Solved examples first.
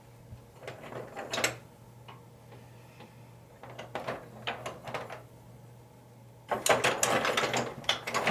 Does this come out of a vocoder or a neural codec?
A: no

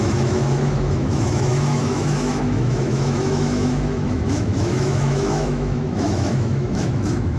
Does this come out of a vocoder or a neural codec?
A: yes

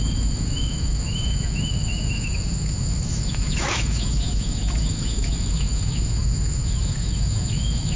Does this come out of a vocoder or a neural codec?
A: yes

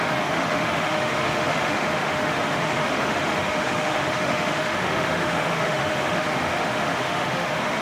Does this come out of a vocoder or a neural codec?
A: yes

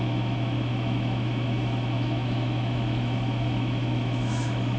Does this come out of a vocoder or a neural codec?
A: yes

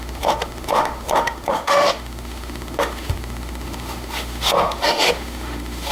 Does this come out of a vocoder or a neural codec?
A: yes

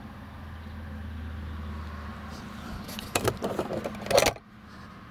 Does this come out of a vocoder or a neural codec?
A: no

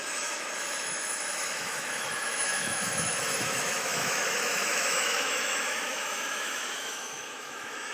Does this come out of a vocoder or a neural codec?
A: yes